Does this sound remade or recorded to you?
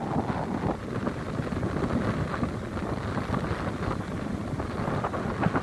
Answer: recorded